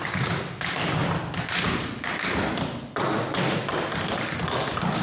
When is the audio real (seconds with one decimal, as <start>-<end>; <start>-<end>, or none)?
0.0-5.0